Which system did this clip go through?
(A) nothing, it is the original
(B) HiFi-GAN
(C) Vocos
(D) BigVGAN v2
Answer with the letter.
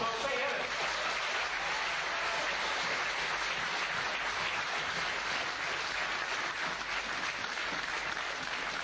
A